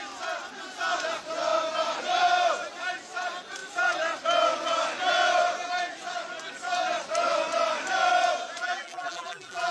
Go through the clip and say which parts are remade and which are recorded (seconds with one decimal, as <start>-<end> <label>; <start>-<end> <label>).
0.0-8.6 recorded; 8.6-9.7 remade